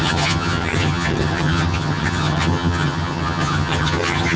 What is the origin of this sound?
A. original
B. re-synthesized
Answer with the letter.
B